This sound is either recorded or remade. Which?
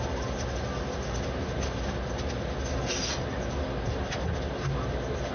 recorded